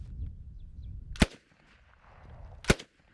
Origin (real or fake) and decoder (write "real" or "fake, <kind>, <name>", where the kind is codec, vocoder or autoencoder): real